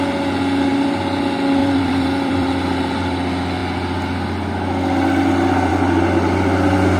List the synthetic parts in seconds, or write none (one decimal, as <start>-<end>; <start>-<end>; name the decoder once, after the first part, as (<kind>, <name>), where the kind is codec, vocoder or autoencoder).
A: 1.6-2.5 (vocoder, BigVGAN v2)